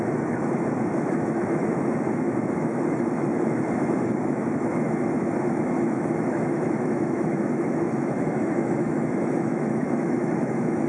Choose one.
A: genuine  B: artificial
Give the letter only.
B